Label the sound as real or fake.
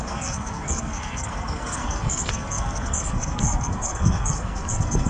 fake